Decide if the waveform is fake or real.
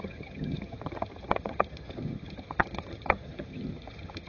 fake